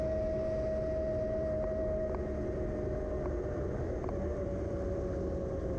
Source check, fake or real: real